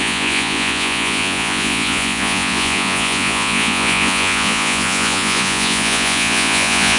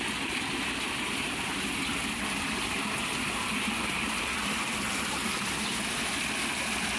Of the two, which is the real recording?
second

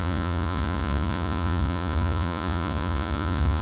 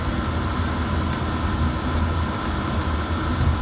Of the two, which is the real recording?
second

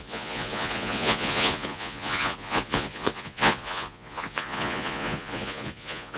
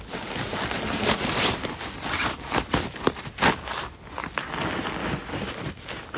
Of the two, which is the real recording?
second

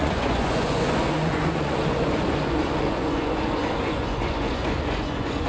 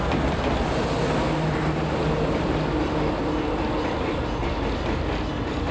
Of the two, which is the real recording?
second